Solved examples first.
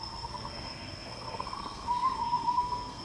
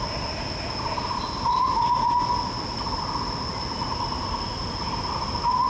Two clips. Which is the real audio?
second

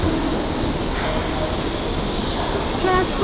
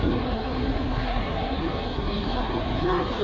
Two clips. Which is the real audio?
first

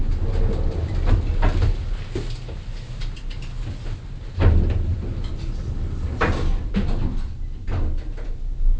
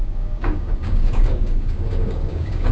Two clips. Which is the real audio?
first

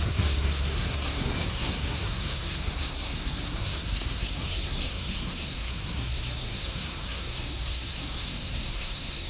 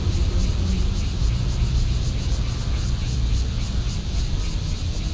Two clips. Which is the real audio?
second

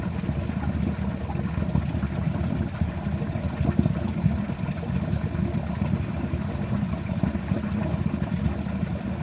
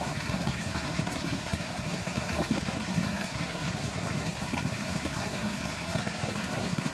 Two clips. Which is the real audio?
first